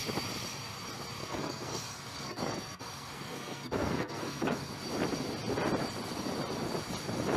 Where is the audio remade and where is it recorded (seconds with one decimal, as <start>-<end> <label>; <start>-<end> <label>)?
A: 0.0-1.2 recorded; 1.2-4.7 remade; 4.7-7.4 recorded